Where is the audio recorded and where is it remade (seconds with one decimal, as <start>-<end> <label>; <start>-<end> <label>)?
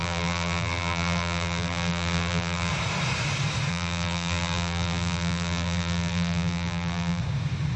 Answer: 0.0-2.7 remade; 2.7-3.7 recorded; 3.7-7.2 remade; 7.2-7.8 recorded